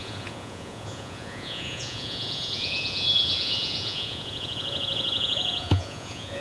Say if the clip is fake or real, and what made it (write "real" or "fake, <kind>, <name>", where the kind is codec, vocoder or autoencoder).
fake, vocoder, Vocos